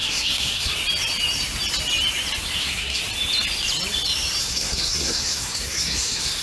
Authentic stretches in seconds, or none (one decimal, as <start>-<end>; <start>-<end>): 0.8-2.6; 3.0-4.4